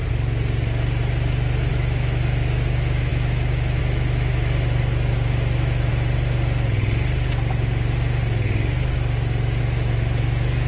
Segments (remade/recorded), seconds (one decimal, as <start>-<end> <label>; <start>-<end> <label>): 0.0-1.7 recorded; 1.7-5.9 remade; 5.9-9.6 recorded; 9.6-10.7 remade